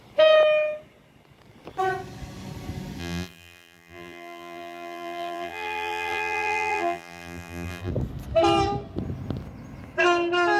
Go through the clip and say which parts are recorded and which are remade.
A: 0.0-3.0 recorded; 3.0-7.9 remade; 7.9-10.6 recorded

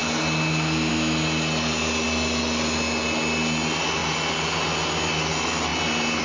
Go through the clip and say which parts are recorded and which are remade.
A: 0.0-6.2 recorded

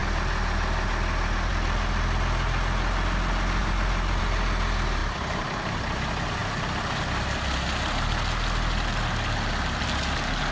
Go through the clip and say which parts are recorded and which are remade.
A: 0.0-3.6 recorded; 3.6-4.2 remade; 4.2-5.0 recorded; 5.0-5.9 remade; 5.9-10.5 recorded

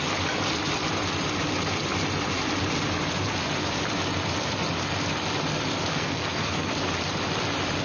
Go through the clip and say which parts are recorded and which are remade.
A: 0.0-5.9 recorded; 5.9-6.7 remade; 6.7-7.8 recorded

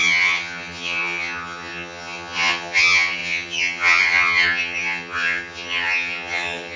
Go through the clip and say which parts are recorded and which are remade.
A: 0.0-6.8 remade

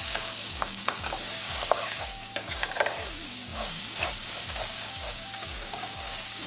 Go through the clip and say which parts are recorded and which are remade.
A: 0.0-6.5 remade